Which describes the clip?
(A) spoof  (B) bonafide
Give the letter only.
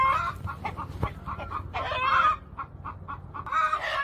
B